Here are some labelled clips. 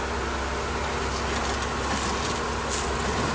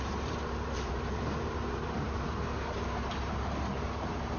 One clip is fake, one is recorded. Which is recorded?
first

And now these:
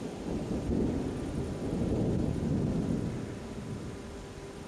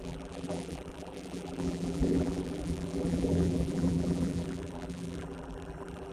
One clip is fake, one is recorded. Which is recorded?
first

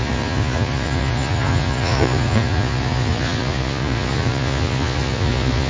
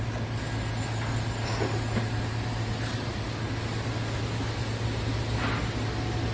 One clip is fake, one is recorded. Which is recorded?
second